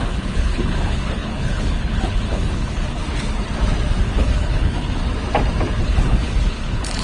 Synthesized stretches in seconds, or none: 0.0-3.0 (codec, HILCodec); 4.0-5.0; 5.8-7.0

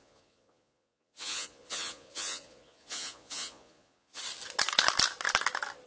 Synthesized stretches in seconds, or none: 0.0-4.2 (vocoder, Vocos)

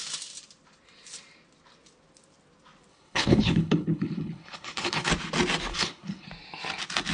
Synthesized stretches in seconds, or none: 2.9-5.1 (codec, HILCodec); 5.7-6.3

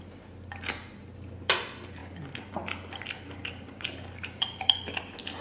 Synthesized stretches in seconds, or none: 0.0-5.4 (vocoder, BigVGAN v2)

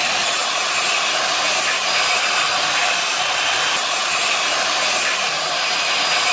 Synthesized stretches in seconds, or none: 0.0-0.4 (vocoder, BigVGAN v2); 1.3-6.3

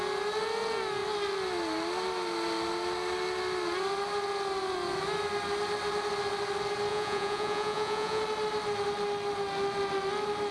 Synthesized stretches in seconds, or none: 6.9-8.2 (vocoder, Vocos)